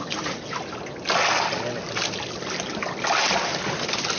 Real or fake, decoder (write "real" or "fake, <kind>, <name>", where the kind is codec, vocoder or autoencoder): real